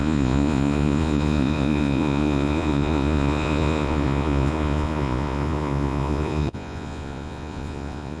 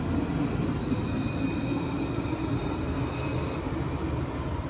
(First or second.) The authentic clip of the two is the second